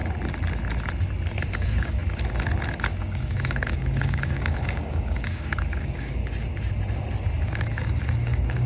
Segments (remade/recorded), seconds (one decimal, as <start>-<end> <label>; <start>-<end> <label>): 0.0-1.6 recorded; 1.6-2.0 remade; 2.0-3.0 recorded; 3.0-6.2 remade; 6.2-7.4 recorded; 7.4-8.7 remade